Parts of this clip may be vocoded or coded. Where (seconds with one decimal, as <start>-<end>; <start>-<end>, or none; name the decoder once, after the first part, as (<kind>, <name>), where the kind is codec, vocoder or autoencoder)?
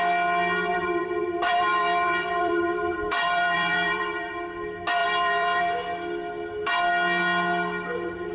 0.7-4.3 (vocoder, BigVGAN v2); 5.0-5.6